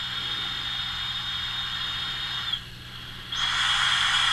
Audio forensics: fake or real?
real